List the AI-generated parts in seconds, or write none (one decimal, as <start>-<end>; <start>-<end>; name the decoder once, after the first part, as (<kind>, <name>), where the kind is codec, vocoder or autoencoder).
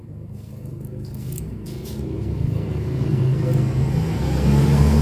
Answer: 0.0-5.0 (codec, SNAC)